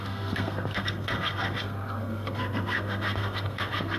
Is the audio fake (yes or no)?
yes